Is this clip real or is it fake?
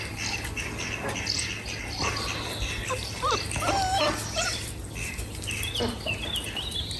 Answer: real